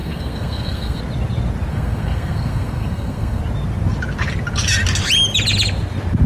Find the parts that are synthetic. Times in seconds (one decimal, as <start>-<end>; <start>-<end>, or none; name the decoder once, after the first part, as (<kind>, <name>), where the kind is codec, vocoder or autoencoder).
0.0-1.0 (codec, SNAC); 1.7-3.4